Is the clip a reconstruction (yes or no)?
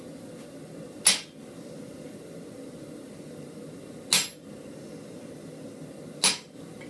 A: no